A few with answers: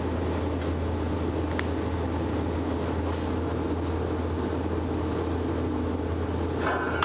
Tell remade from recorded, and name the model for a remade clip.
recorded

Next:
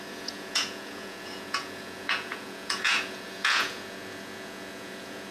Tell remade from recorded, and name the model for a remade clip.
remade, vocoder, Vocos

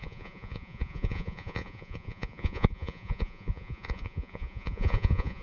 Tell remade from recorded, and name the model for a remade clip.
remade, vocoder, Vocos